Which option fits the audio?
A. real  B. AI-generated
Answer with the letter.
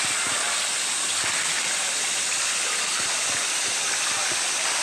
A